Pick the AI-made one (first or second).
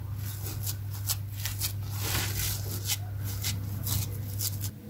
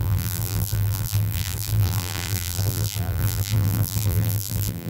second